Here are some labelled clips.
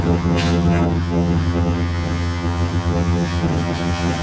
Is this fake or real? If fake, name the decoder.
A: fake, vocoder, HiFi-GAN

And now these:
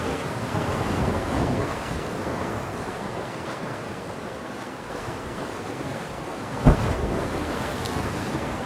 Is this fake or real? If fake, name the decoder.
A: fake, codec, SNAC